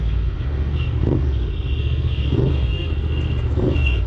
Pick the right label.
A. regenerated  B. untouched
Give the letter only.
A